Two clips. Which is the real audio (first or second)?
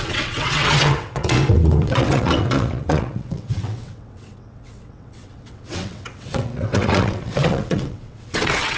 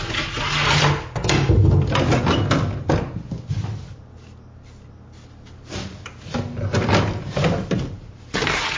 second